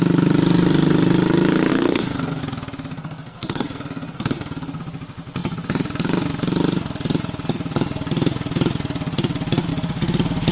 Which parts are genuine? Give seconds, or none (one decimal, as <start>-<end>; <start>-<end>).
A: 0.0-1.7; 2.4-2.9; 4.8-10.5